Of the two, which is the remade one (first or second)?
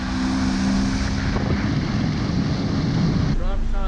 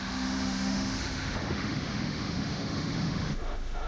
second